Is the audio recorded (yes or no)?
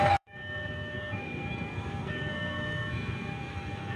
no